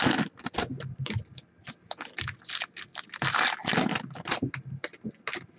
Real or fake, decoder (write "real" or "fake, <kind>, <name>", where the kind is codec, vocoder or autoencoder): real